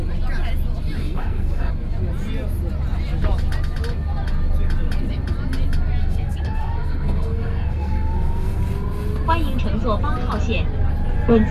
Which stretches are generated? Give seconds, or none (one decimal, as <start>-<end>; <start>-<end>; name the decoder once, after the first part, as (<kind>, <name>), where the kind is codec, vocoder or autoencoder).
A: 1.0-1.7 (codec, SNAC); 6.0-8.6